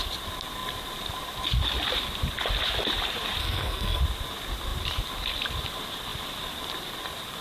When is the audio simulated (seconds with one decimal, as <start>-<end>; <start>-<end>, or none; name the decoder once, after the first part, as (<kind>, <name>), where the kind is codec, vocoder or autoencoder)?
3.4-4.0 (codec, SNAC)